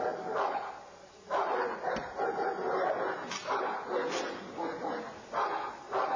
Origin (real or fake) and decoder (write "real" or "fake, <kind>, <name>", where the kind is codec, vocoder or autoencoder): real